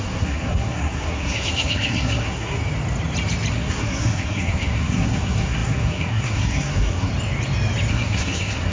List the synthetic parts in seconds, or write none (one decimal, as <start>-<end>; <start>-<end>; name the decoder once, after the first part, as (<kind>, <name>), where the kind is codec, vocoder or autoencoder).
0.0-2.6 (codec, SNAC); 3.5-7.1; 7.9-8.7